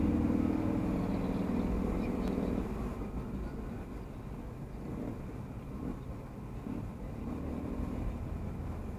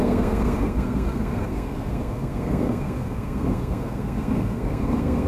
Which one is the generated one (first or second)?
second